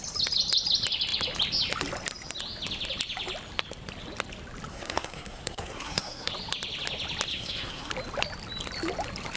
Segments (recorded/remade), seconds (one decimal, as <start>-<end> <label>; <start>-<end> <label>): 0.0-4.7 recorded; 4.7-6.3 remade; 6.3-7.3 recorded; 7.3-7.9 remade; 7.9-9.4 recorded